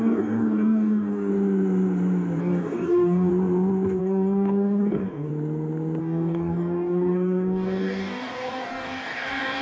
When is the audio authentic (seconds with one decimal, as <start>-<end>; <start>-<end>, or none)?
1.3-2.4; 3.3-4.0; 5.3-6.0